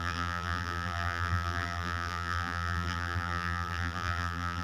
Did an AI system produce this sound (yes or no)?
yes